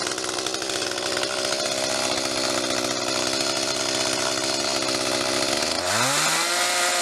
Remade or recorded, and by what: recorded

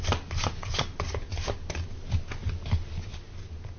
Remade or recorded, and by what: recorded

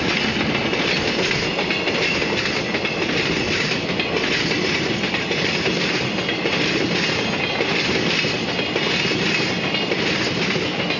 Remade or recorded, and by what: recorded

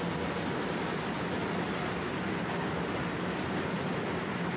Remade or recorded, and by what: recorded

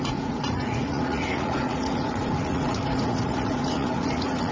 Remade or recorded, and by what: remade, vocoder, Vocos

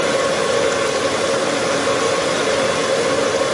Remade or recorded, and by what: recorded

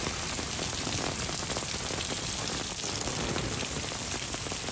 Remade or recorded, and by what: recorded